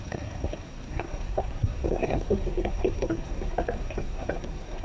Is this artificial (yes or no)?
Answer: yes